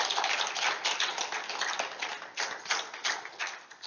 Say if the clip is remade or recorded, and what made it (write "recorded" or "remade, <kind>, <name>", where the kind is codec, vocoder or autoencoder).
recorded